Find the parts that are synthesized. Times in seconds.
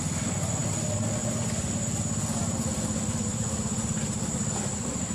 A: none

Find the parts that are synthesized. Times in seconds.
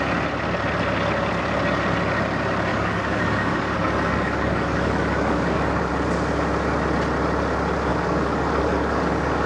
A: 2.7-5.9 (codec, DAC); 7.9-9.5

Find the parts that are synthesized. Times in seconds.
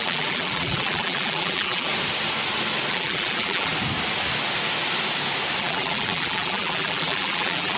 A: 0.0-1.9 (vocoder, BigVGAN v2); 2.9-3.7; 5.6-7.8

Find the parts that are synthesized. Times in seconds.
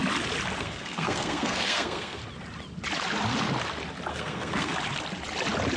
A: 0.6-2.2 (codec, SNAC); 4.1-4.7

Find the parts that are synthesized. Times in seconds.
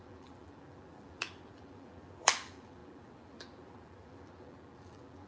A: 0.0-5.3 (vocoder, BigVGAN v2)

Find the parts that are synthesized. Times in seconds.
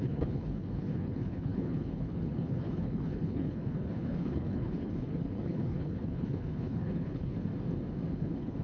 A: 0.0-7.5 (codec, HILCodec); 8.1-8.6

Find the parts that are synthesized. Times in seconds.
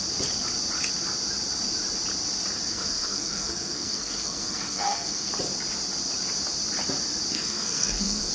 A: 2.7-5.3 (codec, SNAC); 7.3-8.3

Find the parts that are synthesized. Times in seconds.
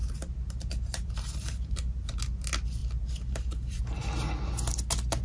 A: 0.0-2.2 (vocoder, BigVGAN v2); 2.8-3.8